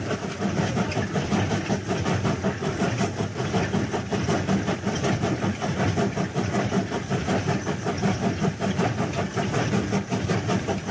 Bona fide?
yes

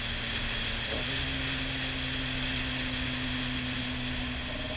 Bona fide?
yes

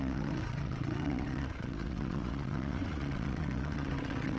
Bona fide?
no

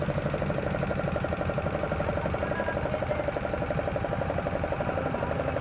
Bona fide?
yes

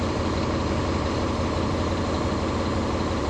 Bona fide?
yes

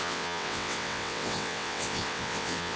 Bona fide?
no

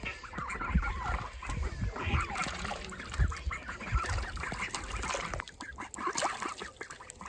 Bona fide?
yes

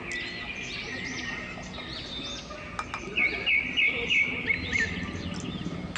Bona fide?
yes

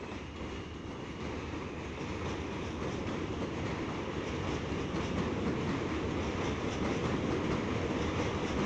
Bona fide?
yes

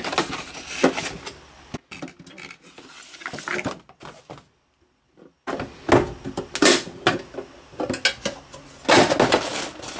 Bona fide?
yes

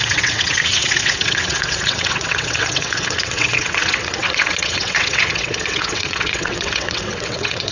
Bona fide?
no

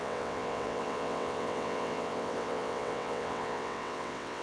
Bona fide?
no